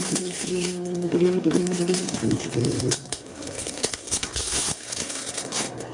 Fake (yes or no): yes